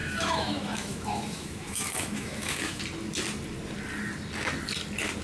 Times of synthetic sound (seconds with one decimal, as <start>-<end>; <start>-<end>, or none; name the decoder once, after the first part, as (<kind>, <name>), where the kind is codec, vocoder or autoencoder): 0.0-2.8 (autoencoder, DAC-VAE)